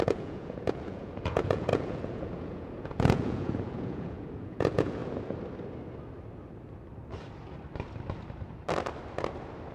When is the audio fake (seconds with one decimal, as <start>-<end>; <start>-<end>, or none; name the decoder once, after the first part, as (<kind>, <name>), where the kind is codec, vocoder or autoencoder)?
0.0-5.0 (vocoder, Vocos)